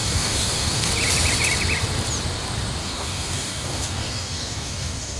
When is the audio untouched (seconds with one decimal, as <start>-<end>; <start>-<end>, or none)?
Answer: 0.9-2.8